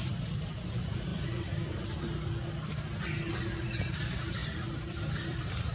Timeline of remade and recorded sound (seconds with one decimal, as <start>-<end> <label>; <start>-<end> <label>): 0.0-1.1 remade; 1.1-2.3 recorded; 2.3-5.7 remade